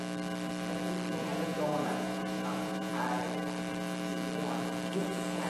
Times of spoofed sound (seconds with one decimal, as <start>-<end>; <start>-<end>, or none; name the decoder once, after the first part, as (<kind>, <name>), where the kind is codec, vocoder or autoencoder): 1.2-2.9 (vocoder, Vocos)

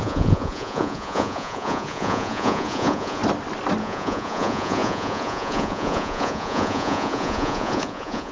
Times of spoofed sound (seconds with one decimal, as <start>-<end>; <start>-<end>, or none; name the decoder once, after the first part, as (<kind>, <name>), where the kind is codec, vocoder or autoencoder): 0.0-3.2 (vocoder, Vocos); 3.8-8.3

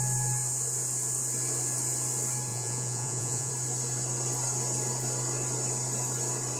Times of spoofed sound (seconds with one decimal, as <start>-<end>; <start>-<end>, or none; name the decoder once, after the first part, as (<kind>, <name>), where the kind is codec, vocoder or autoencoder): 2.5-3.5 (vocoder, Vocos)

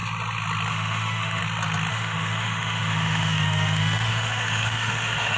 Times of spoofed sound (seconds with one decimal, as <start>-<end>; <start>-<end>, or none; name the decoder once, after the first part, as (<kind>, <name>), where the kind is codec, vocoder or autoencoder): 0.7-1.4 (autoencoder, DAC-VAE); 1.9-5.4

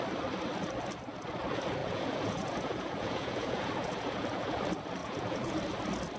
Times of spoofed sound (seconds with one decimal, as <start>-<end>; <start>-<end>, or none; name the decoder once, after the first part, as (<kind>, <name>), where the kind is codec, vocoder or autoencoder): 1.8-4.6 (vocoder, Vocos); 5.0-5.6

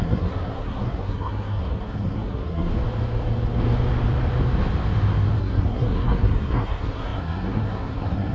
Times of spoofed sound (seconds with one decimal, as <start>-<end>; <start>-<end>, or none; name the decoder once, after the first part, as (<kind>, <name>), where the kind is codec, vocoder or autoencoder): 0.0-2.7 (codec, SNAC); 5.4-8.3

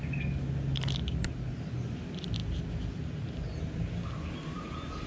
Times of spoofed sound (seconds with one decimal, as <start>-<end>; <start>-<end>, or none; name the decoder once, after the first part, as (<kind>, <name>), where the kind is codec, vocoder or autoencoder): none

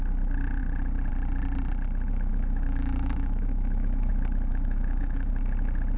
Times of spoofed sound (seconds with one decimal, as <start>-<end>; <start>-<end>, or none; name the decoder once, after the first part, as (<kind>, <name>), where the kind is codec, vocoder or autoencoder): 2.3-4.1 (autoencoder, DAC-VAE); 4.5-5.3